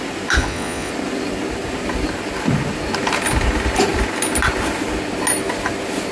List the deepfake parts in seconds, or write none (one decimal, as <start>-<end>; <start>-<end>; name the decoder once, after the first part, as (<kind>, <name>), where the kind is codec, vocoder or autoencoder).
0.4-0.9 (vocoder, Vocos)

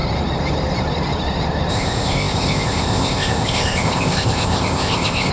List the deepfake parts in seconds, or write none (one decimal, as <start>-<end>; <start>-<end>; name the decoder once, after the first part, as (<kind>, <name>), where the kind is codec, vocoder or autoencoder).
1.7-5.3 (codec, ZipCodec)

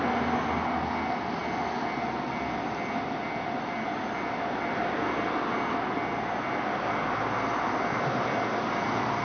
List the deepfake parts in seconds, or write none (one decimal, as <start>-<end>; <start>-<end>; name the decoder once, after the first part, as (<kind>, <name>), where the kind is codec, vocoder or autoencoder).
none

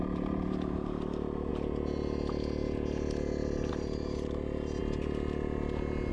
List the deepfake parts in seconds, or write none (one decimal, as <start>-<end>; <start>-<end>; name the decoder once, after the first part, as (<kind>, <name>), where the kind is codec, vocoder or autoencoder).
0.0-1.5 (vocoder, BigVGAN v2); 3.7-4.8

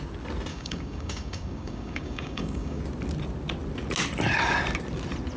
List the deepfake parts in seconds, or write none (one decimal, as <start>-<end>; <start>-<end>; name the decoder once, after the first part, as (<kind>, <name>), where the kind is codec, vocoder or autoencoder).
0.5-2.8 (codec, DAC)

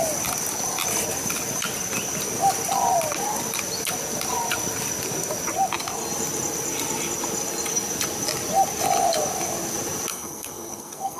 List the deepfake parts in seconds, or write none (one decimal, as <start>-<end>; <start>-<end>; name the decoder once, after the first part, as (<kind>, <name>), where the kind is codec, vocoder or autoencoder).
10.1-11.2 (codec, SNAC)